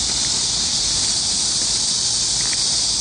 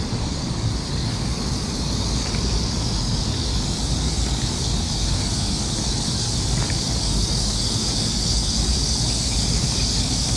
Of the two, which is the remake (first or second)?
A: second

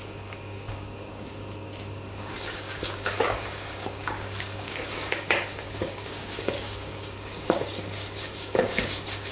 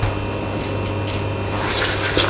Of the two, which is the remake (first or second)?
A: first